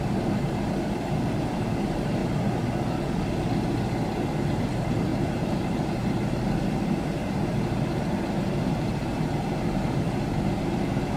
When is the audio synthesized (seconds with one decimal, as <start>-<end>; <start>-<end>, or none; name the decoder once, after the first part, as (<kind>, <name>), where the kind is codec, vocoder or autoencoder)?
0.0-2.2 (vocoder, BigVGAN v2); 4.2-11.2